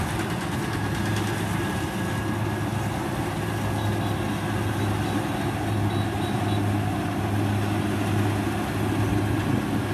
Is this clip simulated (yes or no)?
no